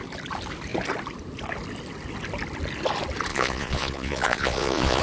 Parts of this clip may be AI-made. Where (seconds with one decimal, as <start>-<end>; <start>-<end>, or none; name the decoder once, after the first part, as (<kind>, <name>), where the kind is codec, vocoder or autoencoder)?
3.3-5.0 (vocoder, Vocos)